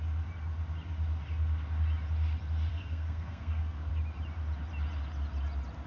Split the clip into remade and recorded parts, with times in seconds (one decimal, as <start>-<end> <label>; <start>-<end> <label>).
0.0-2.7 recorded; 2.7-3.9 remade; 3.9-5.9 recorded